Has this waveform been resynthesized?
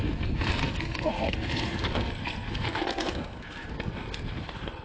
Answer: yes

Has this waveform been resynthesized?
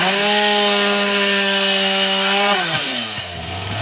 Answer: yes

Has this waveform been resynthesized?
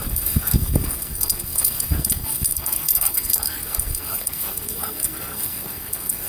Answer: yes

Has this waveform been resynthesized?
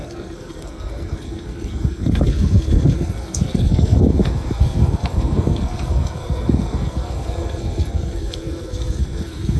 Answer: yes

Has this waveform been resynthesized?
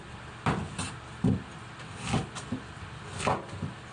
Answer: no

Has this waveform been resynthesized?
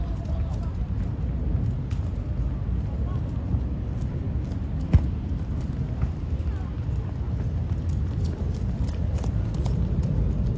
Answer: no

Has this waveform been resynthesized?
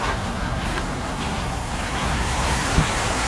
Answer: yes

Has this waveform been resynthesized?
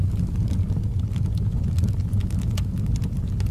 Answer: no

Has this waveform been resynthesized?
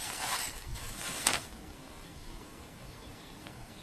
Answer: yes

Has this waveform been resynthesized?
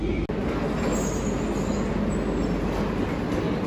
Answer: no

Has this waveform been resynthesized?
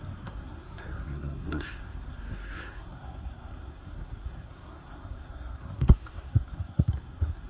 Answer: yes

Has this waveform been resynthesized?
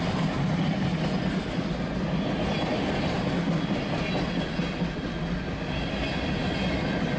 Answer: no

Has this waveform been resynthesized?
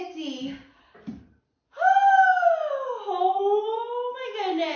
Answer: no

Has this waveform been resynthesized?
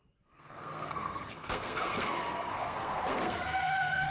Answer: yes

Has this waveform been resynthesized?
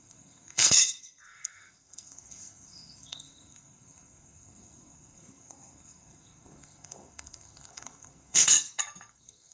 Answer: yes